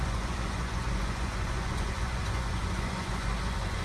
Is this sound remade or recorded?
remade